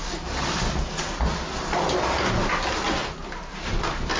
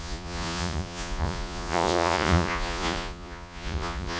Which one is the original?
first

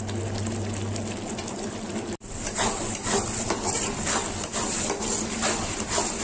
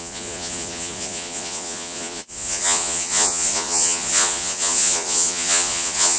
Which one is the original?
first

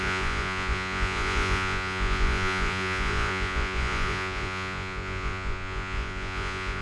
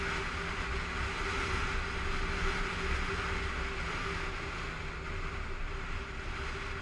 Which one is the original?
second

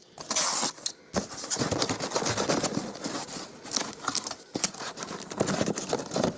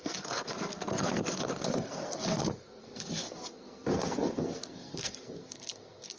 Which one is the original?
first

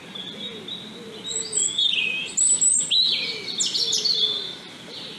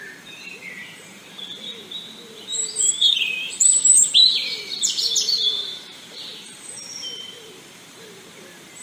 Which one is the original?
first